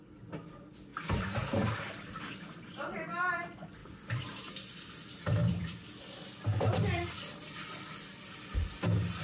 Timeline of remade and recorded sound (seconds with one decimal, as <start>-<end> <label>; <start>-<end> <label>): 0.0-0.9 recorded; 0.9-3.3 remade; 3.3-3.8 recorded; 3.8-4.9 remade; 4.9-5.4 recorded; 5.4-7.2 remade; 7.2-9.2 recorded